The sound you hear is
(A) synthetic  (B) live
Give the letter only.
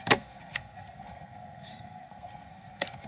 A